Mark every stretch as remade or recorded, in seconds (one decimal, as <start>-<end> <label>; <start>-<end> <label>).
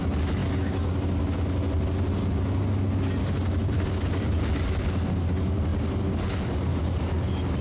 0.0-3.6 recorded; 3.6-4.4 remade; 4.4-6.7 recorded; 6.7-7.6 remade